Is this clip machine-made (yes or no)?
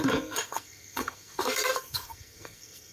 yes